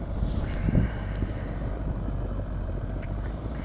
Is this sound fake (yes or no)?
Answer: yes